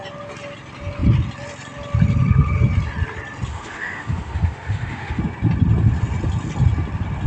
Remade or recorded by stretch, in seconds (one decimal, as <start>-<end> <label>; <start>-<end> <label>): 0.0-3.5 recorded; 3.5-5.2 remade; 5.2-7.3 recorded